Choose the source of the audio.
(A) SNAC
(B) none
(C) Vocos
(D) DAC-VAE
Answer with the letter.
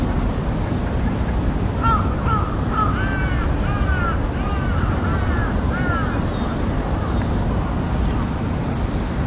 B